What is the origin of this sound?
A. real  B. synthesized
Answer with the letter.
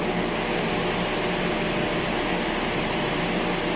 A